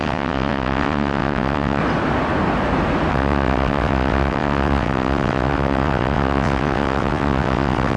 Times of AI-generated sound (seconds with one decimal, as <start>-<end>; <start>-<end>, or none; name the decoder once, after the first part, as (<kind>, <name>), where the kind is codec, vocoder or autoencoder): 0.0-1.8 (vocoder, WaveNeXt); 3.1-8.0